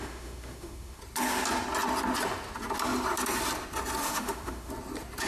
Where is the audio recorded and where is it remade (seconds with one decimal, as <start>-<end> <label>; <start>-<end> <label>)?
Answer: 0.0-1.0 remade; 1.0-4.0 recorded; 4.0-4.7 remade; 4.7-5.3 recorded